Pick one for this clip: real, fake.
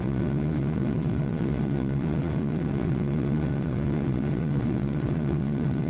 fake